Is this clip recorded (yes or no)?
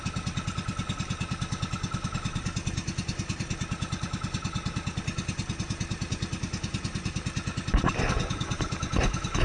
yes